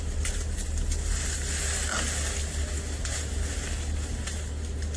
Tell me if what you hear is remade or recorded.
recorded